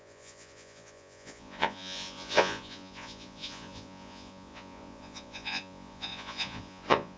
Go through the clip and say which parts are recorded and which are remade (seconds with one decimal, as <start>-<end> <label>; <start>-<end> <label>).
0.0-7.2 remade